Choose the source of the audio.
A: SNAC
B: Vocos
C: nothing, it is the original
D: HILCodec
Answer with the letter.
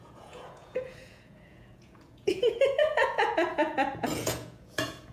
B